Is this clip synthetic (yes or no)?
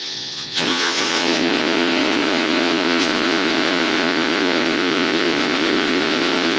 yes